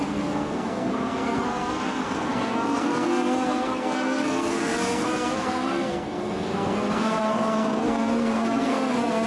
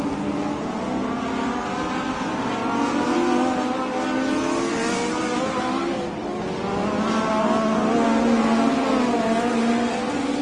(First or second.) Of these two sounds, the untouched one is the second